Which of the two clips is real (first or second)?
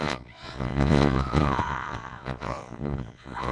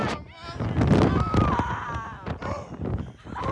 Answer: second